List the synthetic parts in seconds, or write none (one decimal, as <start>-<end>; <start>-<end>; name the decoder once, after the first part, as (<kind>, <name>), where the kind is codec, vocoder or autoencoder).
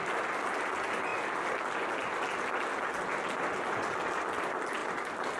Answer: none